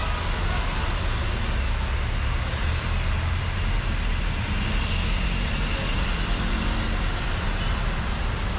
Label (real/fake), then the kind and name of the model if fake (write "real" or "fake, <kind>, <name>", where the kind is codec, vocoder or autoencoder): real